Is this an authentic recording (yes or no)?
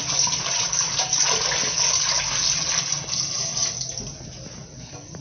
yes